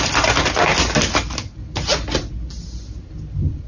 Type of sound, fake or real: real